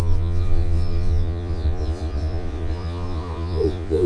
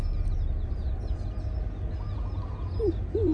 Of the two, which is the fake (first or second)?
first